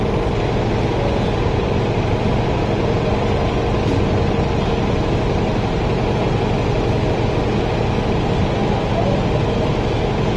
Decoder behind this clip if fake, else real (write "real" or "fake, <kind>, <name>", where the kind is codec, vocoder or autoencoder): real